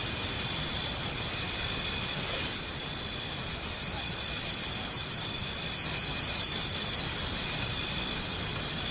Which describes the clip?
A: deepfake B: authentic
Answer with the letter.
B